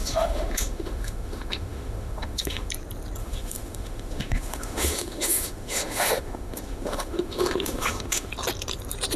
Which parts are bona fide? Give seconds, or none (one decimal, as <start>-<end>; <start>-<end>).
2.7-3.2; 8.3-9.2